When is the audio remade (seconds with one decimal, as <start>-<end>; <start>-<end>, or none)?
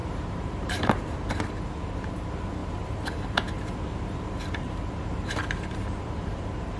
0.0-1.3; 2.6-6.8